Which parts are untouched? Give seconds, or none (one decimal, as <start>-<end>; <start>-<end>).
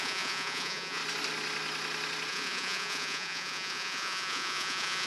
1.0-2.3